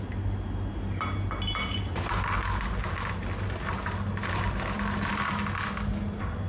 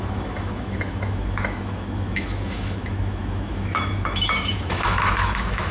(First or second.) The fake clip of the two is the second